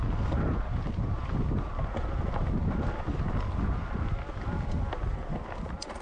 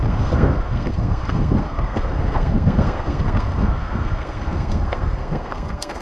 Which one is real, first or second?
first